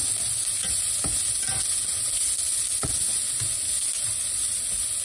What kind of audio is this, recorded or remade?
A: recorded